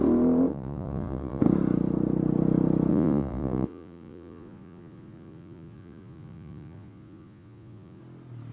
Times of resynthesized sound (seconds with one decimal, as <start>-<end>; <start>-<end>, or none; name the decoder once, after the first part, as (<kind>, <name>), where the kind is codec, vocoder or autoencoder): 0.5-1.4 (vocoder, Vocos); 2.9-8.0